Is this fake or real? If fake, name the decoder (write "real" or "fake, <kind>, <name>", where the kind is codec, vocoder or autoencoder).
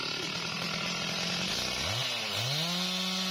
real